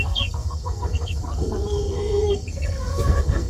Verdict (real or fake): fake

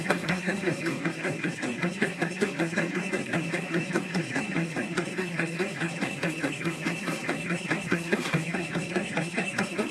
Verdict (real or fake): fake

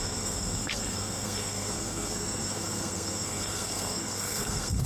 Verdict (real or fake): fake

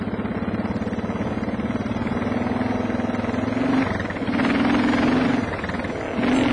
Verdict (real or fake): real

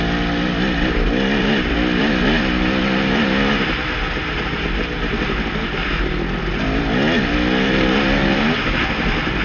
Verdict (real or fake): real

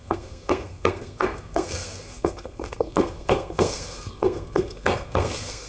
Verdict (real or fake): fake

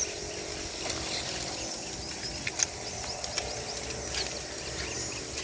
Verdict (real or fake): real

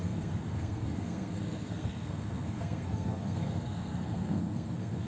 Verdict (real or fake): fake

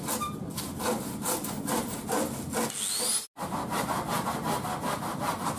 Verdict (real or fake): real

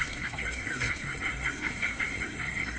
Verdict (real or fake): fake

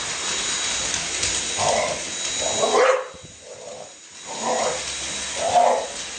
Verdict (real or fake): real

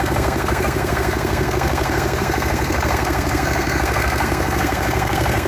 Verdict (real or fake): fake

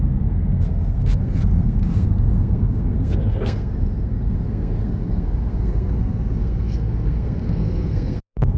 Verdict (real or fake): fake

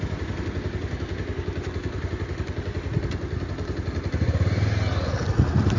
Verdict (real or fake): real